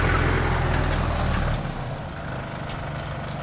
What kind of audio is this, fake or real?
real